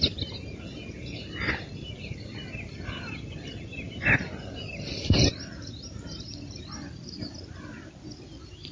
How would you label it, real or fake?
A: real